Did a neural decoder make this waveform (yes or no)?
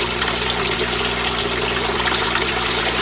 no